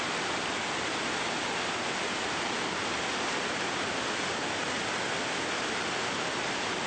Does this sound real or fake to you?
real